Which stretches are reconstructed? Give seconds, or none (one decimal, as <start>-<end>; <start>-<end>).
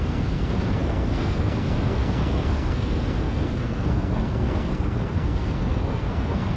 0.0-6.6